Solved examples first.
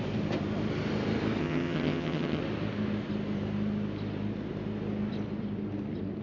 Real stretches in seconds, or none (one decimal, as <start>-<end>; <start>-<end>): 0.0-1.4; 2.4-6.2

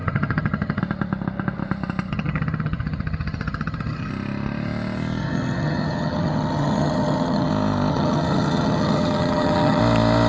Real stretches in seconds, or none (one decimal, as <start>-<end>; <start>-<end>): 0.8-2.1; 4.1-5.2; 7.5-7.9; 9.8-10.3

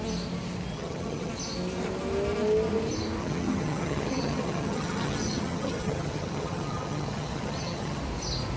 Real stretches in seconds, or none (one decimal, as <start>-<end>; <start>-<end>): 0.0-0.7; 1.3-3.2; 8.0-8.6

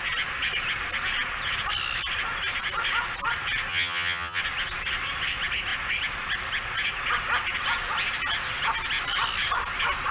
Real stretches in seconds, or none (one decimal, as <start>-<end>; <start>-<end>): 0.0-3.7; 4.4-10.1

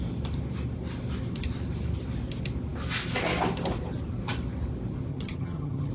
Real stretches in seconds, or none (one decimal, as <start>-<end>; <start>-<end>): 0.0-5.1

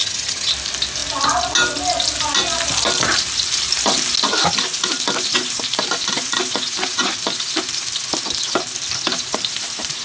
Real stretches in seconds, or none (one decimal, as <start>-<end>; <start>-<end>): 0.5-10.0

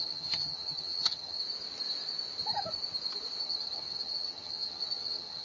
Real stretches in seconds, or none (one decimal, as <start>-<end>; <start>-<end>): 1.4-3.4

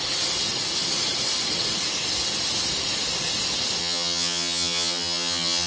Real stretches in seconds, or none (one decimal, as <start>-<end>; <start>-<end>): 0.0-3.8